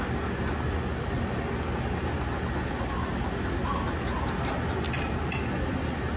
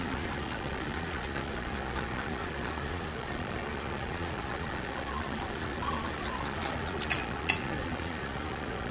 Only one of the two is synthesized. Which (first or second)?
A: second